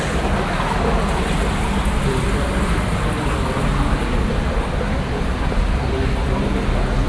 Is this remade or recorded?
recorded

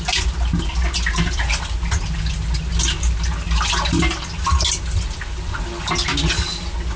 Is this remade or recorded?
recorded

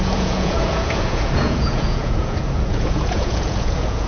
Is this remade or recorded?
remade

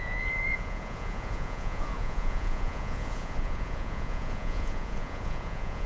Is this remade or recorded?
remade